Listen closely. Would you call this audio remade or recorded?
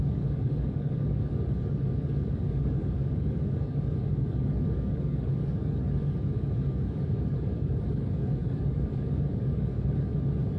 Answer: remade